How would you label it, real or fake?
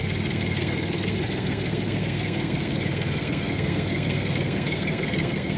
fake